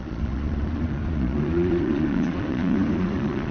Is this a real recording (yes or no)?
no